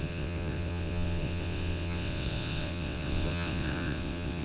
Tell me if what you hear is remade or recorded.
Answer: remade